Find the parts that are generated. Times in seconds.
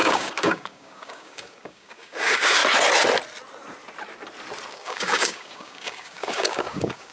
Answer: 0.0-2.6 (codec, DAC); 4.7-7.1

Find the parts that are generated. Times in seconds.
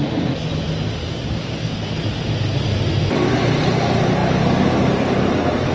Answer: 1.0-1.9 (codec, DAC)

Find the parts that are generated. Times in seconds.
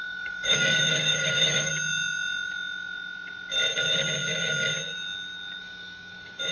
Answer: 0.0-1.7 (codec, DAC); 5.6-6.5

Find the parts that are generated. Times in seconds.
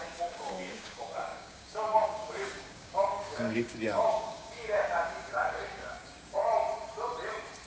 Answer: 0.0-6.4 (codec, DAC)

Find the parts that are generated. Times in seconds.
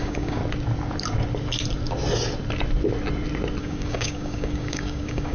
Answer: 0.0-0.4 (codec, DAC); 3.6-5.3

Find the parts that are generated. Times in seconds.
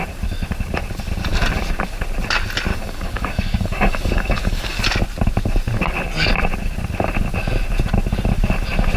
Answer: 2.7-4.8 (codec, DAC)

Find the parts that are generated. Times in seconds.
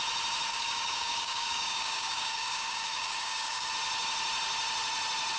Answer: 0.5-3.7 (codec, DAC)